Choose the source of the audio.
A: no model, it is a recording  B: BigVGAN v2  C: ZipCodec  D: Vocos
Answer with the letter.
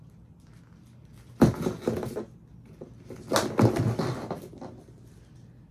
A